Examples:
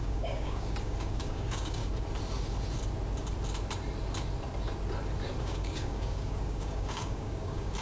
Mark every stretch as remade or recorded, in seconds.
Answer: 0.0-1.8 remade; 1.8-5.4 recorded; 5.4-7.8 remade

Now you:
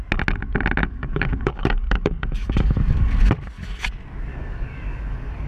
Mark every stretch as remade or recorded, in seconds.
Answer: 0.0-0.8 recorded; 0.8-3.1 remade; 3.1-4.3 recorded; 4.3-5.5 remade

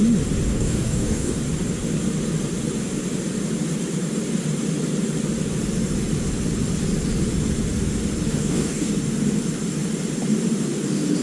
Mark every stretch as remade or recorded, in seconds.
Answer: 0.0-0.5 recorded; 0.5-1.4 remade; 1.4-8.3 recorded; 8.3-8.9 remade; 8.9-11.2 recorded

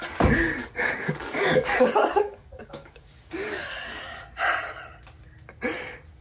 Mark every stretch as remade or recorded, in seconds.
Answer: 0.0-0.6 recorded; 0.6-4.0 remade; 4.0-6.2 recorded

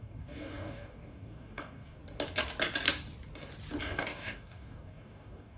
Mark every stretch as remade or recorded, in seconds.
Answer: 0.0-2.0 remade; 2.0-3.8 recorded; 3.8-5.6 remade

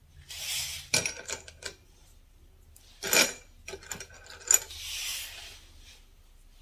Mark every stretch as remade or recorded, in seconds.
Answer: 0.0-6.6 recorded

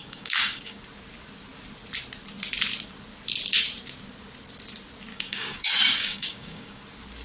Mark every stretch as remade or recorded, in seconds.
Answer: 0.0-0.8 remade; 0.8-5.1 recorded; 5.1-6.8 remade; 6.8-7.2 recorded

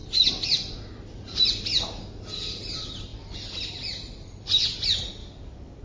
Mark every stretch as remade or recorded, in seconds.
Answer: 0.0-5.2 recorded; 5.2-5.8 remade